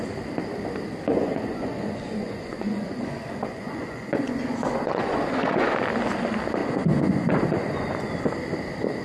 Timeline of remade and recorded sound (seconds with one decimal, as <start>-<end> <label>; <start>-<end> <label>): 0.0-1.1 recorded; 1.1-5.8 remade; 5.8-6.6 recorded; 6.6-8.1 remade; 8.1-9.0 recorded